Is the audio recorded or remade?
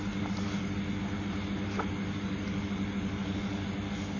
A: recorded